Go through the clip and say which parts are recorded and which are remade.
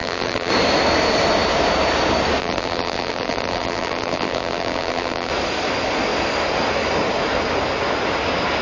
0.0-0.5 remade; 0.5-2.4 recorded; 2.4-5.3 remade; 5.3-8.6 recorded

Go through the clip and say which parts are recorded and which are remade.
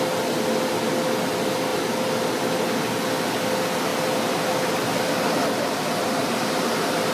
0.0-7.1 recorded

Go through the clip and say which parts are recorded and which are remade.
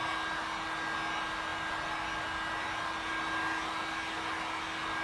0.0-5.0 recorded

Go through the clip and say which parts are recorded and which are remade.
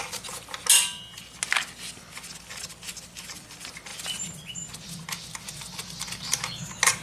0.0-3.9 recorded; 3.9-4.5 remade; 4.5-7.0 recorded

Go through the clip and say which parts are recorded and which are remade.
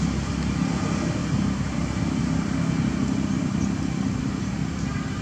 0.0-1.2 recorded; 1.2-4.2 remade; 4.2-5.2 recorded